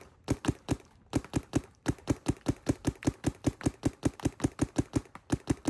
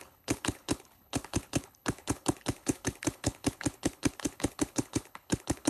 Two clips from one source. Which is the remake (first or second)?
second